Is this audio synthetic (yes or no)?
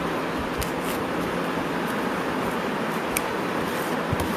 no